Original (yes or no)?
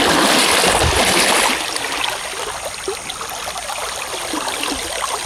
yes